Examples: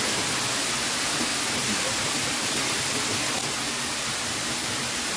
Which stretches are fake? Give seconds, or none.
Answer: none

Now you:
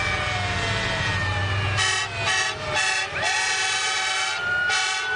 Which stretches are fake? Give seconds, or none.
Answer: none

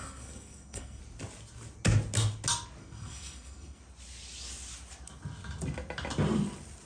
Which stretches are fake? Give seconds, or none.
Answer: 0.0-1.0; 2.8-3.8

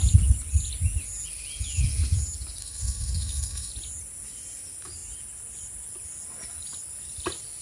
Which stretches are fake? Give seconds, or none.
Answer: 2.6-3.7